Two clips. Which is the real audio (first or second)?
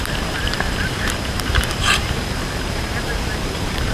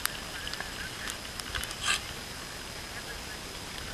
second